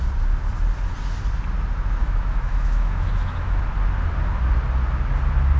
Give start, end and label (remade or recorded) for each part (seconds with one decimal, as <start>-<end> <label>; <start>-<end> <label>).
0.0-2.0 recorded; 2.0-3.6 remade; 3.6-5.6 recorded